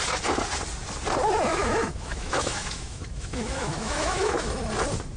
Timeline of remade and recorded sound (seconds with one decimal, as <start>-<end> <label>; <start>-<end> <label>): 0.0-1.5 recorded; 1.5-4.6 remade; 4.6-5.2 recorded